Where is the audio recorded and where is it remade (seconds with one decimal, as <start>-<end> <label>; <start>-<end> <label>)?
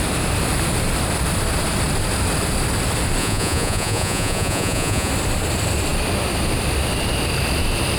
0.0-3.2 recorded; 3.2-5.1 remade; 5.1-8.0 recorded